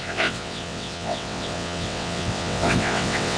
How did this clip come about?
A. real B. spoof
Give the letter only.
B